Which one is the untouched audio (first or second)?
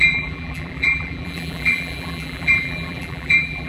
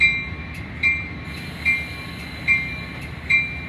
second